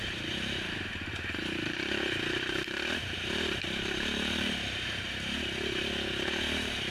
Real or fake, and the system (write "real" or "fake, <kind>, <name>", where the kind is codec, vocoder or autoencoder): fake, vocoder, BigVGAN v2